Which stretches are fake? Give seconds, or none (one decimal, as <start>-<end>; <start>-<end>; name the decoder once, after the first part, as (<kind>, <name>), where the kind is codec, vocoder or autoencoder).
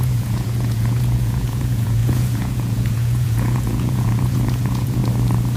0.0-5.0 (vocoder, Vocos)